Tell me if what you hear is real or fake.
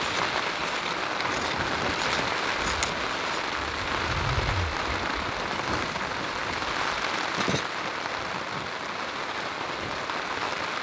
real